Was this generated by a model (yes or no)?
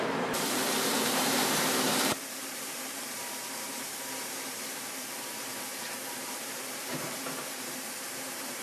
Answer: yes